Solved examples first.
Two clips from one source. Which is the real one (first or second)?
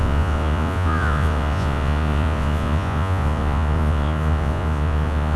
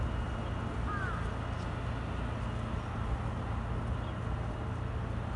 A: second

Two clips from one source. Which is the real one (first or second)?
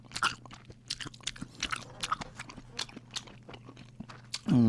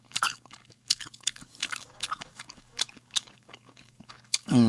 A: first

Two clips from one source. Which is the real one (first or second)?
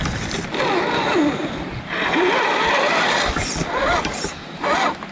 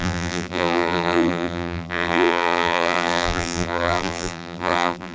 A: first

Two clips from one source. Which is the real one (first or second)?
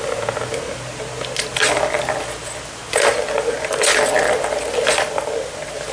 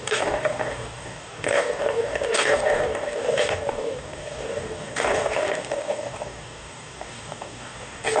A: first